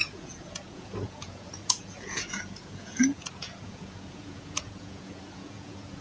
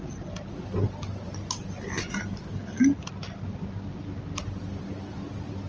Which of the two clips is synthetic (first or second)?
first